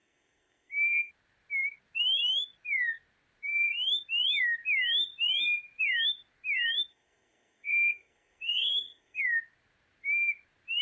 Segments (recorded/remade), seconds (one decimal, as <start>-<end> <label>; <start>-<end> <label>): 0.0-1.1 remade; 1.1-6.9 recorded; 6.9-9.2 remade; 9.2-10.8 recorded